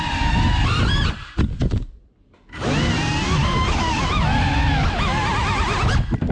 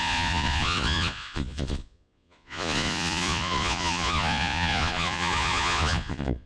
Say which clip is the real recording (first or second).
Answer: first